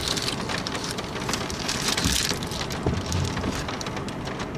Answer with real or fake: real